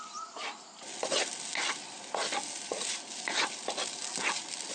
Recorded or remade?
recorded